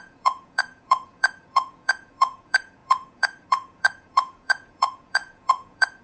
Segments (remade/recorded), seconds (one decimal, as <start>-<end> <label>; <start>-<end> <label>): 0.0-6.0 remade